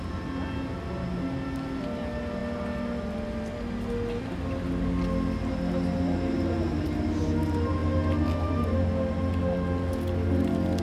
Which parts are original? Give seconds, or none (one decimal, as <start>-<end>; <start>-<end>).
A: 0.0-10.8

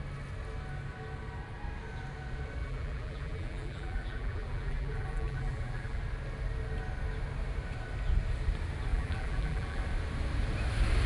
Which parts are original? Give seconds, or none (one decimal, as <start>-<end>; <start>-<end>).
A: 0.0-2.6; 6.0-8.9; 9.8-11.1

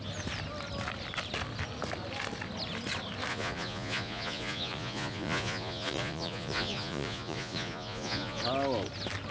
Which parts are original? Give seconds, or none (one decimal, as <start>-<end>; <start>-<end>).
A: 0.0-3.3; 8.4-9.3

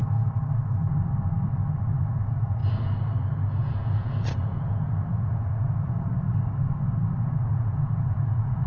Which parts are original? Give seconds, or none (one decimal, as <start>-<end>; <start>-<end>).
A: 0.0-2.0; 2.6-3.6; 6.1-7.5

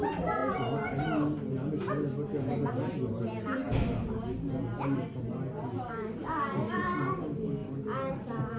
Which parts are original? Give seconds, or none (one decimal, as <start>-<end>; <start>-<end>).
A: 0.0-8.6

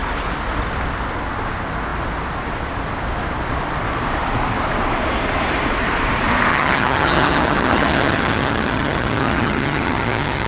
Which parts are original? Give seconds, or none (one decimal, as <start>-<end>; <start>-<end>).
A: 0.0-6.5

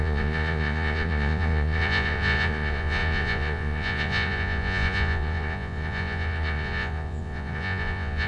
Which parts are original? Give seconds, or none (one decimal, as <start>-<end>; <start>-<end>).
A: none